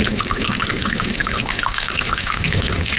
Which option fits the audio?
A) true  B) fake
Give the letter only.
B